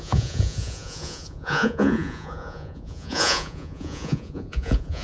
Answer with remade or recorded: remade